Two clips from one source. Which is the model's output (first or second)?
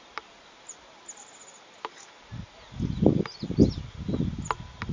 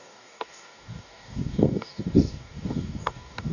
second